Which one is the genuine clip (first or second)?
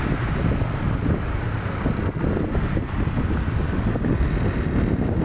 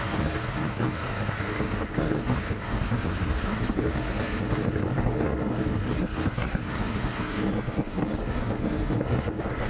first